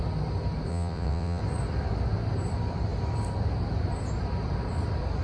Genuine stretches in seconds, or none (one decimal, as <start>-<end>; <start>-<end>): 0.0-0.7; 1.4-5.2